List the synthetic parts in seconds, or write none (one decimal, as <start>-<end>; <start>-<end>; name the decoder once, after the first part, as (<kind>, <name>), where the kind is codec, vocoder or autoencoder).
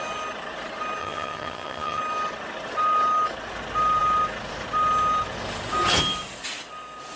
1.0-2.0 (vocoder, HiFi-GAN)